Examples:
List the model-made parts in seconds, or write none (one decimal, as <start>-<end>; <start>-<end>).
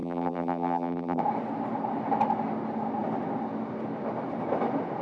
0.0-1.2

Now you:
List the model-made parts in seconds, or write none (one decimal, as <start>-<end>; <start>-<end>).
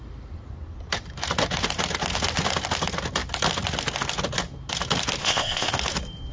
5.2-5.7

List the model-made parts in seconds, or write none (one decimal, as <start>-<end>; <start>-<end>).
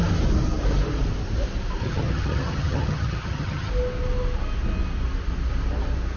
1.8-3.7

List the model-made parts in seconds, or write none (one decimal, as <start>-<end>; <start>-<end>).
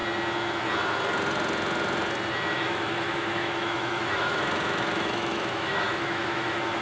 2.5-6.8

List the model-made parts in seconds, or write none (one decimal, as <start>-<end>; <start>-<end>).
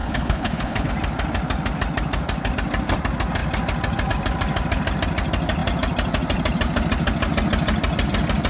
0.0-0.9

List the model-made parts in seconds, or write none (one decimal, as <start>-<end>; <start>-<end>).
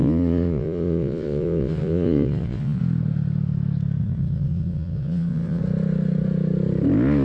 0.0-2.8; 4.0-5.6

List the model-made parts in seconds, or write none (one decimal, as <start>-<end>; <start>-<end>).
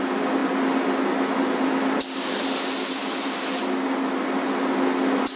none